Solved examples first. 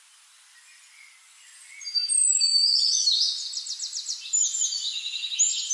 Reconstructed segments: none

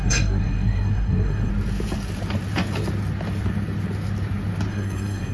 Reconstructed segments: 0.0-1.5 (codec, SNAC); 4.7-5.3